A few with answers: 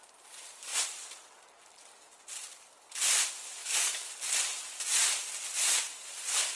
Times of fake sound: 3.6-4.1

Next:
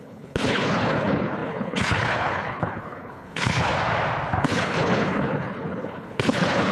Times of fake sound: 0.0-3.7; 4.4-6.7

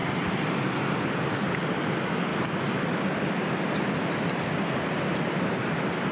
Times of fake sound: none

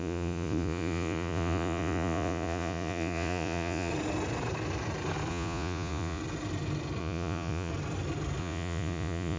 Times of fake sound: 0.0-3.9; 5.3-6.2; 7.0-7.7; 8.4-9.4